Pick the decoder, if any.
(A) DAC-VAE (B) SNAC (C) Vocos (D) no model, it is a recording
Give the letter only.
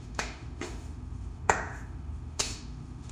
A